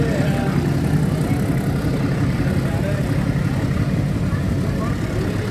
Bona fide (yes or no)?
yes